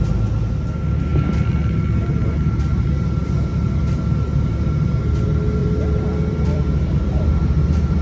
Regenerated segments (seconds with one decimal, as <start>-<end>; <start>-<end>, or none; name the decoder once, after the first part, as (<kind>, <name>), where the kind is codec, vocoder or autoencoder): 1.1-1.8 (vocoder, BigVGAN v2); 5.6-8.0